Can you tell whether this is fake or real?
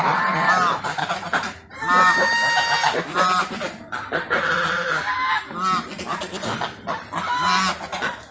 real